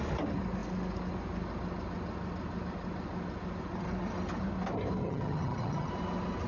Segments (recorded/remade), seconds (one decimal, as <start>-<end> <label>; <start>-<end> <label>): 0.0-5.0 recorded; 5.0-5.9 remade; 5.9-6.5 recorded